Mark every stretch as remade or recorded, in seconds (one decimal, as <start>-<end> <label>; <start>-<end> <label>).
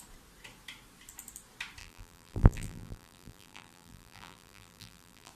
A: 0.0-1.8 recorded; 1.8-5.3 remade